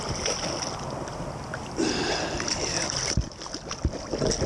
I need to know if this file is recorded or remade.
recorded